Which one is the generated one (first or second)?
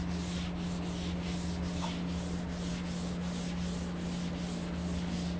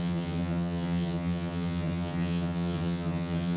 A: second